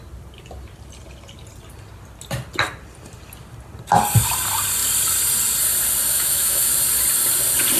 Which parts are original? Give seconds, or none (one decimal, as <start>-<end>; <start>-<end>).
0.0-6.1; 6.7-7.8